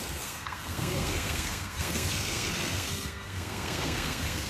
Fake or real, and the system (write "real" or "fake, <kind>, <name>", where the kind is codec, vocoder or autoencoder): fake, codec, SNAC